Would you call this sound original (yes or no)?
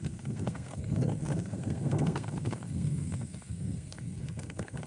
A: no